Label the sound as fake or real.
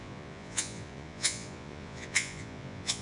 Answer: fake